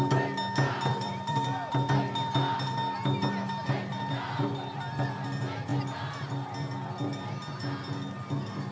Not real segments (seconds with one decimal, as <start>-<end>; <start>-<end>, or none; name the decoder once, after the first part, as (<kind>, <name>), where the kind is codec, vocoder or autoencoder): 0.9-1.9 (vocoder, BigVGAN v2)